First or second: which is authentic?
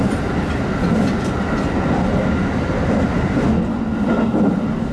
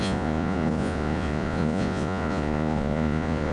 first